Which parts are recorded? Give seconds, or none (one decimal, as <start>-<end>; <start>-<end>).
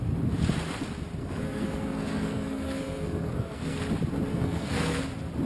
0.0-1.2; 3.8-4.3; 5.0-5.5